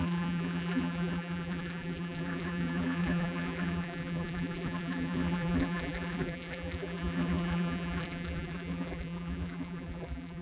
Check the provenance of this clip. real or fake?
fake